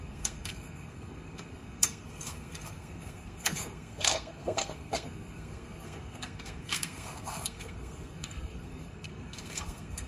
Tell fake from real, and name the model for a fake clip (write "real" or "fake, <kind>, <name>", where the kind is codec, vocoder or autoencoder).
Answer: fake, codec, SNAC